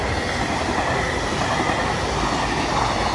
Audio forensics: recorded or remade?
recorded